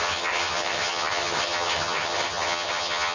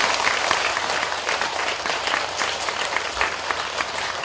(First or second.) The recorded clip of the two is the second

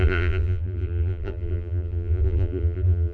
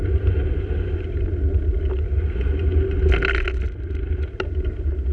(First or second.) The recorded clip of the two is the second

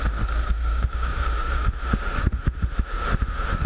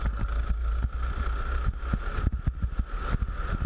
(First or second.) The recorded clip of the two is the second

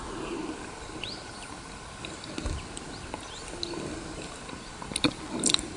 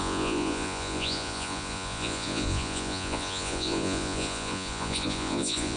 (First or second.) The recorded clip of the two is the first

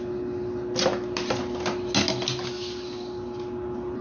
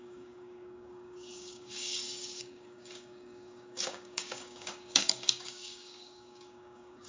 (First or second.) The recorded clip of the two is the first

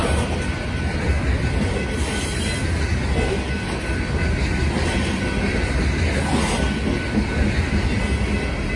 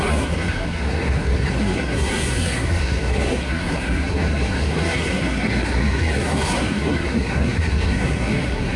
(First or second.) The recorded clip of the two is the first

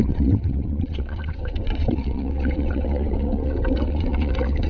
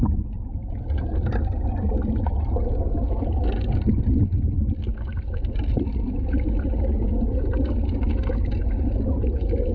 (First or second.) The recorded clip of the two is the second